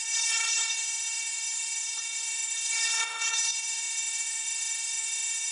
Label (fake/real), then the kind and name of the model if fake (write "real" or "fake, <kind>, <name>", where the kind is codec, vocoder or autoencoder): fake, codec, HILCodec